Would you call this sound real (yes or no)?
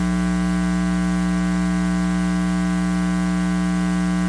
yes